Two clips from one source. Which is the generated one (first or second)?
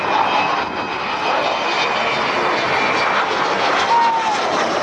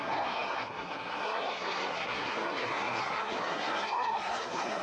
second